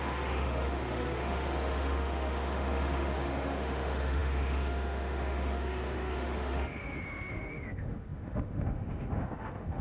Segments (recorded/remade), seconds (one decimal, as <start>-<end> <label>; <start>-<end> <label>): 0.0-9.8 remade